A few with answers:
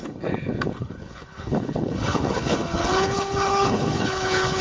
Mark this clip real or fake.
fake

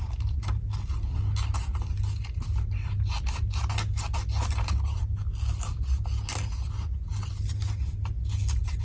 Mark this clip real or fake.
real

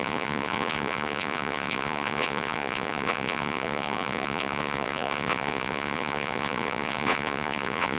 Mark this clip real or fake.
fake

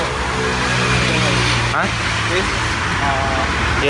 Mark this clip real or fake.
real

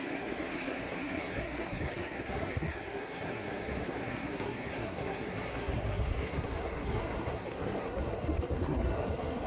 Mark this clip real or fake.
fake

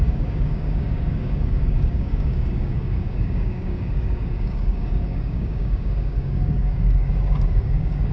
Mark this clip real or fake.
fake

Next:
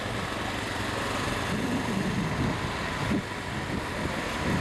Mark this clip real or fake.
real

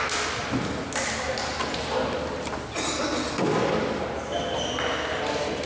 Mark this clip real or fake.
real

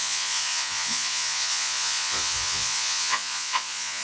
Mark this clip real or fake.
fake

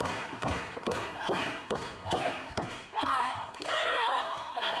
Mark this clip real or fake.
fake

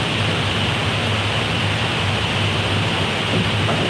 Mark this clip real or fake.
real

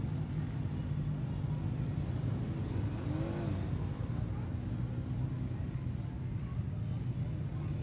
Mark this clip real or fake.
real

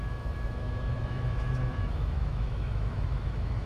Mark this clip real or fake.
fake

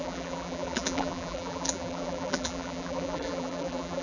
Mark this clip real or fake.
fake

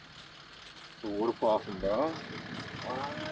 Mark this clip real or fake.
real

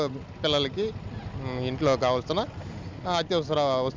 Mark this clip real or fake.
real